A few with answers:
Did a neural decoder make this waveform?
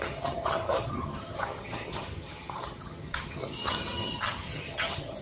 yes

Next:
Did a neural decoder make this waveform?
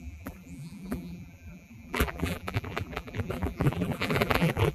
yes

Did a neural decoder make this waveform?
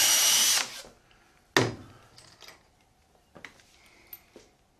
no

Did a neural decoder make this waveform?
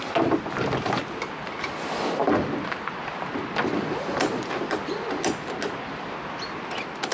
no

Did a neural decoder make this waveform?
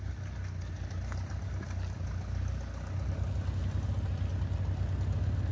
no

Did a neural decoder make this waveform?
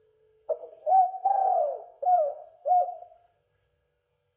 yes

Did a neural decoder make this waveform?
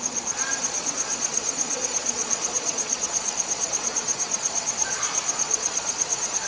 yes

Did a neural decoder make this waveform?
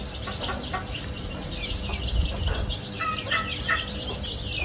no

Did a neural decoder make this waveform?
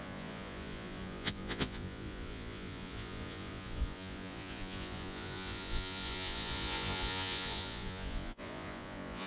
yes